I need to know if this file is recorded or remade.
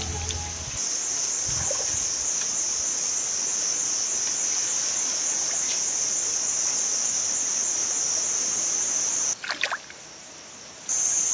recorded